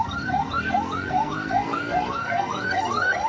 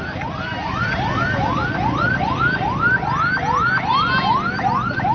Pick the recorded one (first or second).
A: second